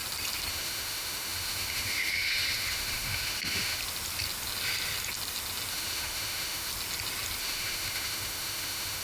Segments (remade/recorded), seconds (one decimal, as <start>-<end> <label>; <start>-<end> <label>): 0.0-0.5 recorded; 0.5-3.8 remade; 3.8-5.7 recorded; 5.7-6.7 remade; 6.7-7.4 recorded; 7.4-9.0 remade